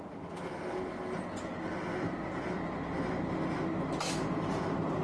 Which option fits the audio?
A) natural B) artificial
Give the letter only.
A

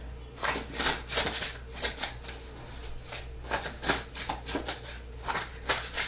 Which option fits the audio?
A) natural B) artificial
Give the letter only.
A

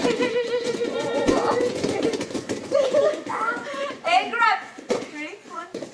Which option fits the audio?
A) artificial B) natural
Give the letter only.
A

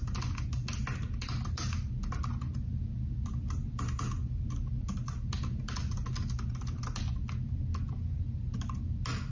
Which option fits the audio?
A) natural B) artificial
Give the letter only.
A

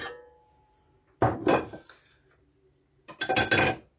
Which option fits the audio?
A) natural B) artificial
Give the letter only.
A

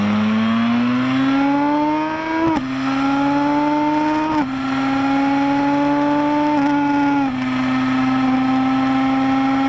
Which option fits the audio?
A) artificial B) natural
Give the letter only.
B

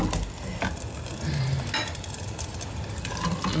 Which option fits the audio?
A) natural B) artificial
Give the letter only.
A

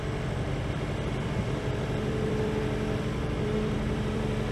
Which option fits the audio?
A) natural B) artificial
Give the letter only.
B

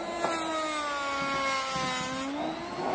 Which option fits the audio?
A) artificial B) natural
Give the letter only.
B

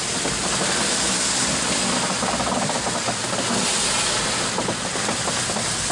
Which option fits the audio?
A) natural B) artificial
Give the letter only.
A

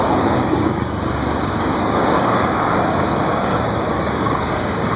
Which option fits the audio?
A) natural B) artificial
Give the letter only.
B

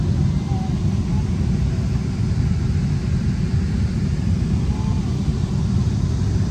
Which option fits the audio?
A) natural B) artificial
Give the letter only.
A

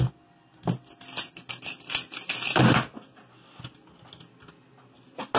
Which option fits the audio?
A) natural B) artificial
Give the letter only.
A